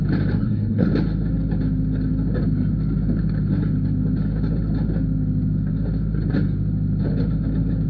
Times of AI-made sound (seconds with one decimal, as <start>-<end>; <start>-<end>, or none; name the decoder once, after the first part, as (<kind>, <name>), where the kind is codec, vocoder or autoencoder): 0.4-0.9 (codec, SNAC)